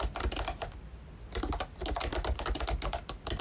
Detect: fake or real real